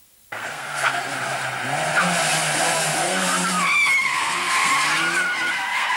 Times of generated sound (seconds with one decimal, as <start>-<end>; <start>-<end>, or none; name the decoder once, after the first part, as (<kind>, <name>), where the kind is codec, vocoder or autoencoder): 0.0-1.0 (codec, SNAC); 3.0-3.4; 4.0-4.7; 5.5-6.0

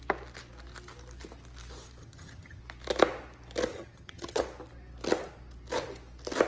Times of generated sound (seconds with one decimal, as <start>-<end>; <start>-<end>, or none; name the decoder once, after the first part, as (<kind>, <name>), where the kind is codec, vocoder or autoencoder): 2.0-2.6 (vocoder, HiFi-GAN); 3.7-4.4

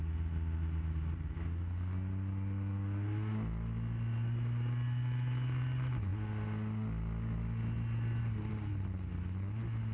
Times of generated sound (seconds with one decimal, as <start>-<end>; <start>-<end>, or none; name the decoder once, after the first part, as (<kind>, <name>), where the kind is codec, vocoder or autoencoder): none

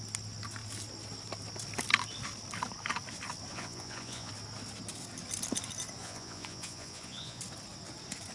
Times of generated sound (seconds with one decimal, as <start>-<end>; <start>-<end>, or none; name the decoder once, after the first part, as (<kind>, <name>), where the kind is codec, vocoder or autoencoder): 3.5-4.3 (vocoder, Vocos); 6.0-7.4

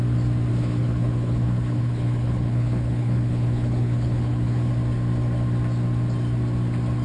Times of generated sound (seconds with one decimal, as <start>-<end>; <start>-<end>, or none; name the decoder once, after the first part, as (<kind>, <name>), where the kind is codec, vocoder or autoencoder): 0.5-4.7 (codec, HILCodec)

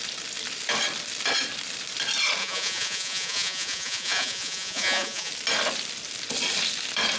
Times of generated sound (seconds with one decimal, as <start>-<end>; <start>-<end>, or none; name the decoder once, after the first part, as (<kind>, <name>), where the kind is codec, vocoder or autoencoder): 2.4-5.3 (vocoder, Vocos)

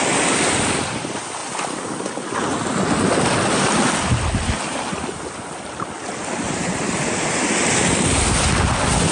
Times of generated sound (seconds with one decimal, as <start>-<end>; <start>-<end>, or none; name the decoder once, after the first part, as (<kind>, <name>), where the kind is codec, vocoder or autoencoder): none